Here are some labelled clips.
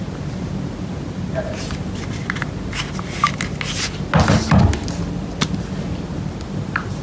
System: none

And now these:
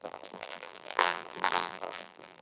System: vocoder, BigVGAN v2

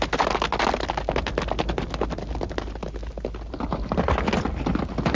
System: none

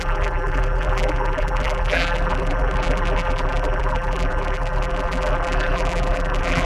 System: vocoder, BigVGAN v2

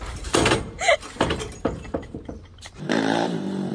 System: vocoder, BigVGAN v2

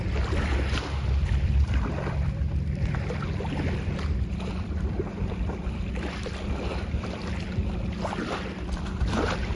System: vocoder, BigVGAN v2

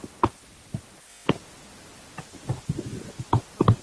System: none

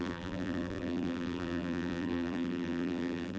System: vocoder, BigVGAN v2